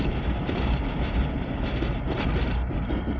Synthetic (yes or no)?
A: yes